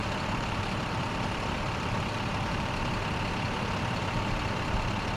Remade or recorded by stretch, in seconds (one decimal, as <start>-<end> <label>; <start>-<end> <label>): 0.0-2.7 remade; 2.7-5.2 recorded